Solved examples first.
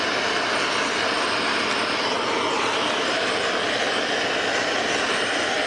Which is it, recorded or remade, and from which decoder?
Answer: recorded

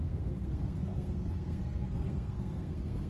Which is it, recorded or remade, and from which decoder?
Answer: remade, codec, SNAC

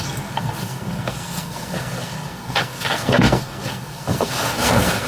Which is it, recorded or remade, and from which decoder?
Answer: remade, codec, SNAC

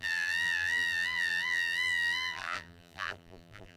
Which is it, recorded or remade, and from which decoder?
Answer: remade, vocoder, BigVGAN v2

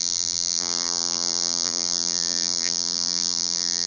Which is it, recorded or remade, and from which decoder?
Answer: remade, vocoder, BigVGAN v2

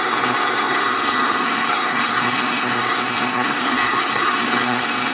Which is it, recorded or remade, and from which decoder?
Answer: remade, codec, SNAC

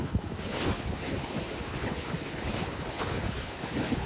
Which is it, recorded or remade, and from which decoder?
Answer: remade, codec, HILCodec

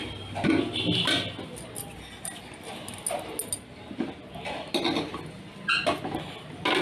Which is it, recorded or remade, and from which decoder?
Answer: recorded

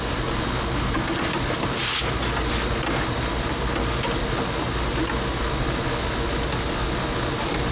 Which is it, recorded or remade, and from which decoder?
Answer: recorded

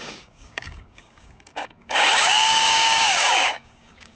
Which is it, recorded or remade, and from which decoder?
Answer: remade, codec, DAC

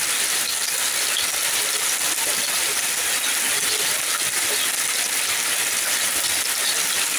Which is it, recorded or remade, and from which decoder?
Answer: recorded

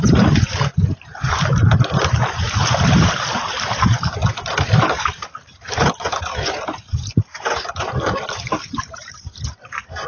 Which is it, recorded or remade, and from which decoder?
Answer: remade, vocoder, BigVGAN v2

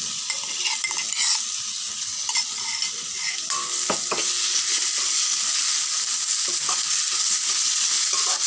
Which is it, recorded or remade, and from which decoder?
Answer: recorded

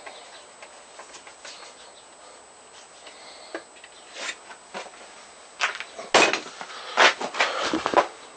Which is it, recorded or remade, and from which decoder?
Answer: recorded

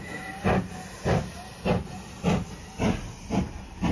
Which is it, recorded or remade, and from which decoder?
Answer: recorded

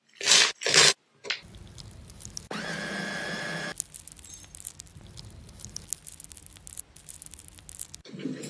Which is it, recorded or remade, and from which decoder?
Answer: recorded